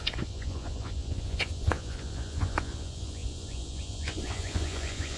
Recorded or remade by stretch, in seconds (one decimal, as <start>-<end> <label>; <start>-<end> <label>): 0.0-5.2 remade